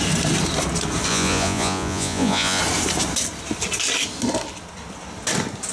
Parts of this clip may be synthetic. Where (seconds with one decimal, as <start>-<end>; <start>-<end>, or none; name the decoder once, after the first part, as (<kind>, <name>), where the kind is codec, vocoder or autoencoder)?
1.1-2.6 (vocoder, Vocos)